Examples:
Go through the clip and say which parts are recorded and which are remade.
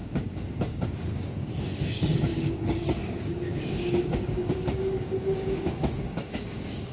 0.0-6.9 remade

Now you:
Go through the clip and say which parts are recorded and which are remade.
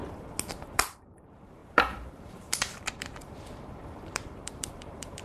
0.0-0.5 recorded; 0.5-5.2 remade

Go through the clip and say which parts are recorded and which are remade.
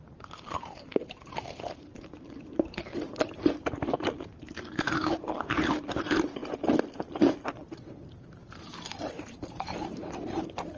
0.0-6.4 remade; 6.4-7.1 recorded; 7.1-10.8 remade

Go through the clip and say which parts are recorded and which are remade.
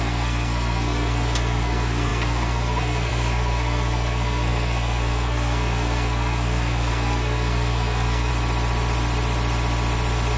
0.0-8.3 remade; 8.3-10.4 recorded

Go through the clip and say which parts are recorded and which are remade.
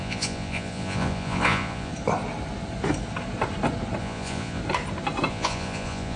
0.0-1.9 remade; 1.9-4.0 recorded; 4.0-4.6 remade; 4.6-5.3 recorded; 5.3-6.2 remade